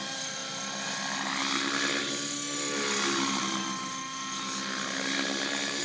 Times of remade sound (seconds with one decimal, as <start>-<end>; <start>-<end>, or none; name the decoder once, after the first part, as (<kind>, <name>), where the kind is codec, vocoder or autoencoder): none